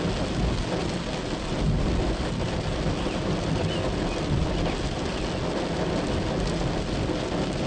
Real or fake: real